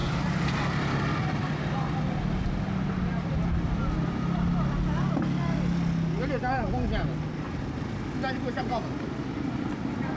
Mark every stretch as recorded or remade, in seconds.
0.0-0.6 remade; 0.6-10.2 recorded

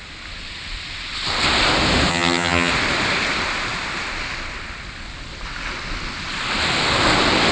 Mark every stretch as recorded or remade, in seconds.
0.0-2.1 recorded; 2.1-2.7 remade; 2.7-7.5 recorded